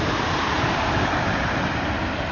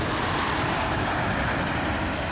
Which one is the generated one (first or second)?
first